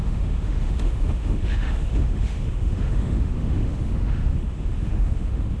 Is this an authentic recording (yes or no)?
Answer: no